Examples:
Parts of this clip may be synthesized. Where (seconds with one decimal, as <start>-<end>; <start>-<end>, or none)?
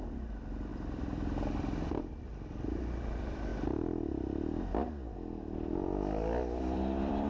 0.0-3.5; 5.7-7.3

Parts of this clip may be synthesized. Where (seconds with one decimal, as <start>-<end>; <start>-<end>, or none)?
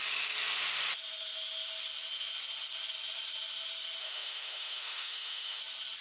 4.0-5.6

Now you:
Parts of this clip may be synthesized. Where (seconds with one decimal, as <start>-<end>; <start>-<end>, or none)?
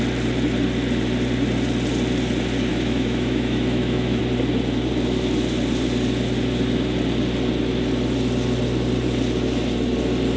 2.7-4.2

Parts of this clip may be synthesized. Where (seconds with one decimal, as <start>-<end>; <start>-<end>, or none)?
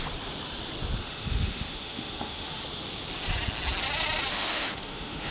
1.0-2.6; 4.3-5.3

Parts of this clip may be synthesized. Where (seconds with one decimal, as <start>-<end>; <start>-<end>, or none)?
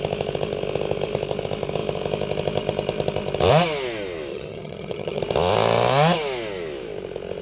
4.3-5.2